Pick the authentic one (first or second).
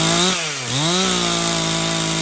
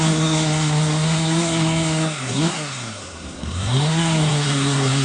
first